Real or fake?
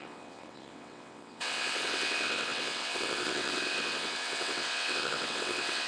fake